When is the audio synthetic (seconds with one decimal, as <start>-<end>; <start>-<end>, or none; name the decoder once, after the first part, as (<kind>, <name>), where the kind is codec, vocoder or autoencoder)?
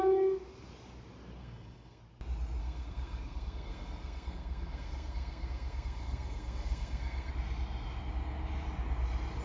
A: 1.4-2.0 (codec, SNAC); 2.6-7.3